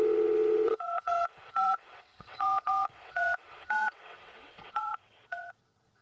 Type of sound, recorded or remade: remade